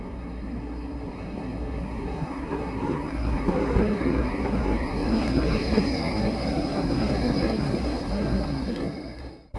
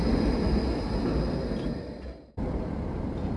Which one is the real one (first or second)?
second